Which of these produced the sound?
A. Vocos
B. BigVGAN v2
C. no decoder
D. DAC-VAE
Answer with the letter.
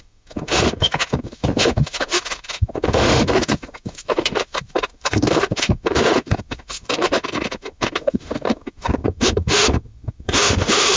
D